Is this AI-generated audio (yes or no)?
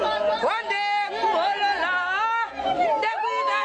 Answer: no